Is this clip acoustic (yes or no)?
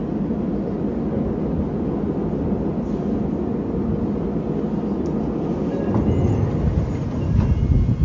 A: yes